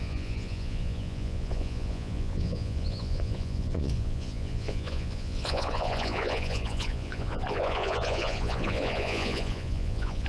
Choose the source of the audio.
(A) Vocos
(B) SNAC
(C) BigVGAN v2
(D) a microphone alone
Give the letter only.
A